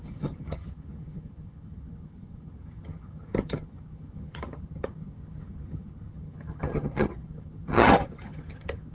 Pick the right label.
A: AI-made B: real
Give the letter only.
A